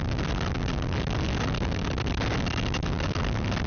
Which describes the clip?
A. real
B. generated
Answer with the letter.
A